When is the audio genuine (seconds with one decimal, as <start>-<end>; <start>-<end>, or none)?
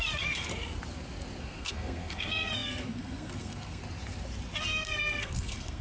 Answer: 0.5-1.4; 3.8-4.6